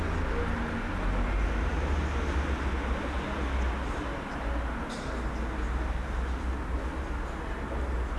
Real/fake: real